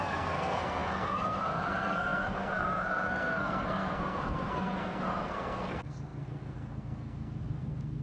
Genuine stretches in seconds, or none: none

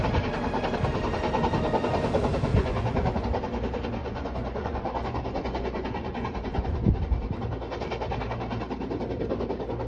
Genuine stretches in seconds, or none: 0.0-2.5; 3.2-4.0; 7.0-9.9

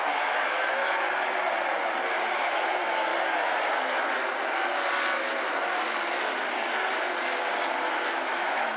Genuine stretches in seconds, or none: 0.8-2.1; 3.1-8.3

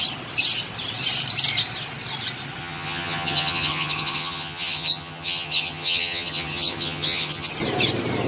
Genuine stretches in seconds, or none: 0.0-2.6; 7.5-8.3

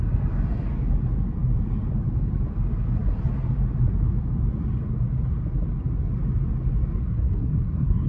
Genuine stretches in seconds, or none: 0.0-7.0

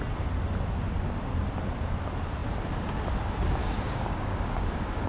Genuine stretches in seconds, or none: 0.0-3.6